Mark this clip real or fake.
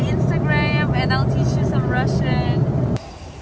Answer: real